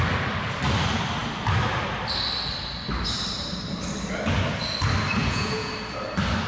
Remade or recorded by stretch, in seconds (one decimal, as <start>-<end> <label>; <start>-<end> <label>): 0.0-5.2 recorded; 5.2-5.7 remade; 5.7-6.5 recorded